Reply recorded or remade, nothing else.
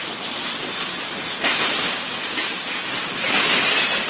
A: recorded